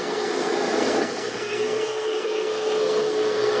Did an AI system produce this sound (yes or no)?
yes